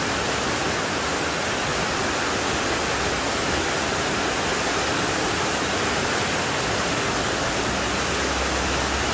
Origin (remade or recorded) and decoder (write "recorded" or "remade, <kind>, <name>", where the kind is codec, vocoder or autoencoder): recorded